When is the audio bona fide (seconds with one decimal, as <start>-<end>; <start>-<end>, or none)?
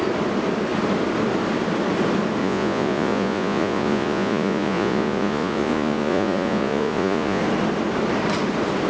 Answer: 0.0-2.4; 7.4-8.9